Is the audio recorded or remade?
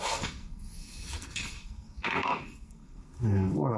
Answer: remade